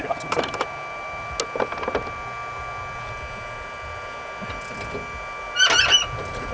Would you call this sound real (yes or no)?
yes